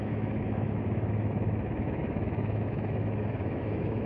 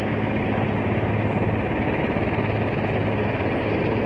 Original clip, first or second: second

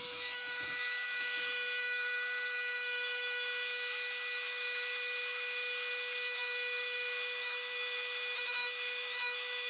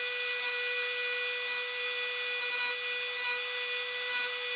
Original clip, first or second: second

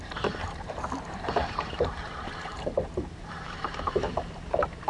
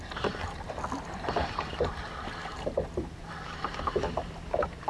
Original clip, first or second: second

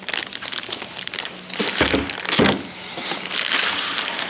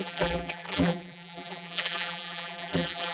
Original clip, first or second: first